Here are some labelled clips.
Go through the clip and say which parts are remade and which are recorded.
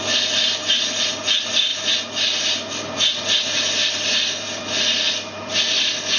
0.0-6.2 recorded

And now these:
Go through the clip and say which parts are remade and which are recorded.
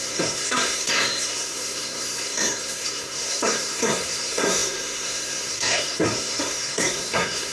0.0-7.5 remade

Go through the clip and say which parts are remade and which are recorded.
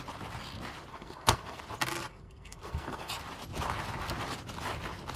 0.0-0.9 recorded; 0.9-1.6 remade; 1.6-2.1 recorded; 2.1-3.1 remade; 3.1-5.2 recorded